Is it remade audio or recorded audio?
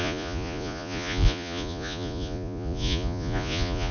remade